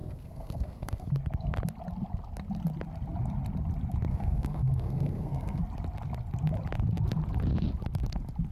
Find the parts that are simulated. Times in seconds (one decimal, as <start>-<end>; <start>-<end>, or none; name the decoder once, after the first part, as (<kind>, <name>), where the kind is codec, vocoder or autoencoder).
0.0-1.1 (codec, SNAC); 4.1-5.6